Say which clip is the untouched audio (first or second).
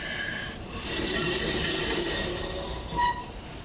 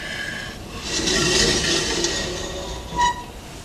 second